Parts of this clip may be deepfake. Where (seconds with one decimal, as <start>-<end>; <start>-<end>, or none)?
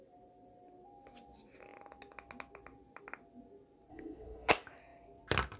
3.9-4.5